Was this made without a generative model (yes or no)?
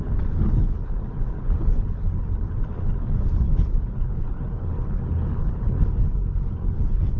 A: no